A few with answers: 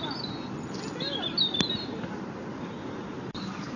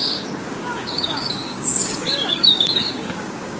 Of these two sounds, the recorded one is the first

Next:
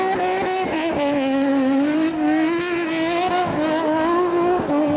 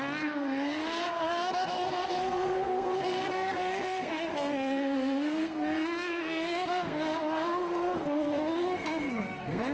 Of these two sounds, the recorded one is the first